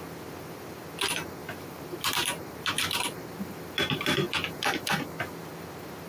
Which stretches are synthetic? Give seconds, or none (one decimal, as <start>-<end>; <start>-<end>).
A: 1.4-5.1